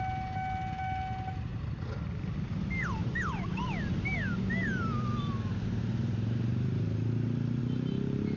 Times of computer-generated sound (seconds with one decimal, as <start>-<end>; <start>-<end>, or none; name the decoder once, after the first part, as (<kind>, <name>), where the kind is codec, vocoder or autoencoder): none